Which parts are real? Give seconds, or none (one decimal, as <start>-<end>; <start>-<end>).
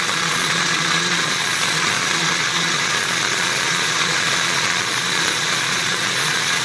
none